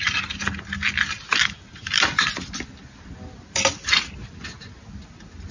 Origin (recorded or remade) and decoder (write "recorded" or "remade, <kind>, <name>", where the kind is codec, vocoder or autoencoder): recorded